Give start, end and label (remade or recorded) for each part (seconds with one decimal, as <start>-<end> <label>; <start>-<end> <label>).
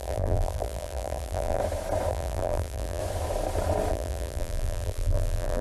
0.0-1.6 remade; 1.6-2.1 recorded; 2.1-3.0 remade; 3.0-3.9 recorded; 3.9-5.6 remade